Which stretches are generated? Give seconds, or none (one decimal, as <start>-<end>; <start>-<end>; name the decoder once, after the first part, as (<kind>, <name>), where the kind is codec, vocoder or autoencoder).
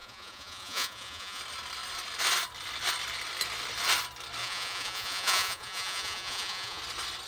0.0-1.4 (vocoder, Vocos); 4.4-6.8